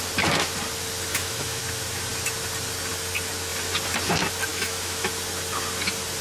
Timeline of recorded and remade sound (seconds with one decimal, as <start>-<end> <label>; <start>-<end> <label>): 0.0-1.1 recorded; 1.1-1.6 remade; 1.6-4.5 recorded; 4.5-5.1 remade; 5.1-6.2 recorded